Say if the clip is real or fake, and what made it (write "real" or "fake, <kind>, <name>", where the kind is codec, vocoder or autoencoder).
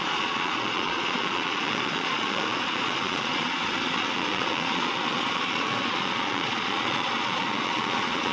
fake, vocoder, Vocos